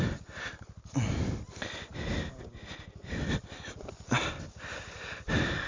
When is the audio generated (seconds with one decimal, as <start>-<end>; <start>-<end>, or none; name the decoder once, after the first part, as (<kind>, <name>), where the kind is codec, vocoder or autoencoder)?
none